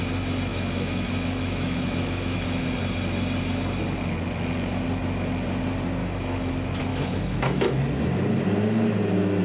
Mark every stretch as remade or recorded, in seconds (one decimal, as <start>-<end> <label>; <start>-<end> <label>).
0.0-0.5 recorded; 0.5-2.6 remade; 2.6-6.0 recorded; 6.0-6.5 remade; 6.5-6.9 recorded; 6.9-7.8 remade; 7.8-9.4 recorded